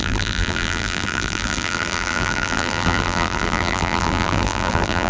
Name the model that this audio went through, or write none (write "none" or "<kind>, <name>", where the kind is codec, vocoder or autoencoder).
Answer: vocoder, BigVGAN v2